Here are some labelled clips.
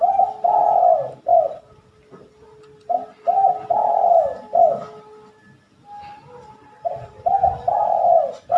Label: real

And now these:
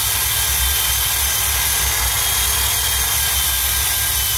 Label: real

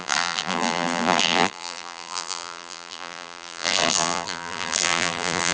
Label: fake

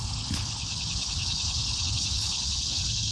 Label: fake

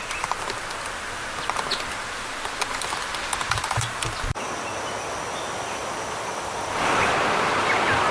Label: real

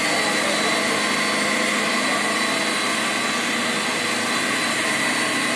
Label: real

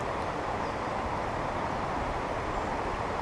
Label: real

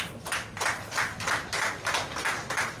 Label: real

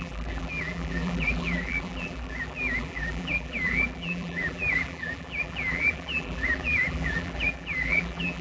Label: fake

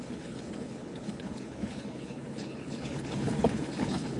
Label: fake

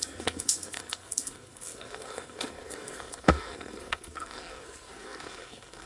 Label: fake